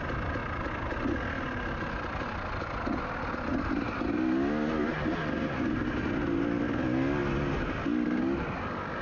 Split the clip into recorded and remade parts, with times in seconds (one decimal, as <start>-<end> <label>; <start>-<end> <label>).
0.0-9.0 recorded